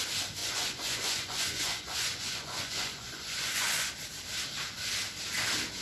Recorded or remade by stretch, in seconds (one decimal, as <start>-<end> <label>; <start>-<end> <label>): 0.0-0.4 recorded; 0.4-3.9 remade; 3.9-5.8 recorded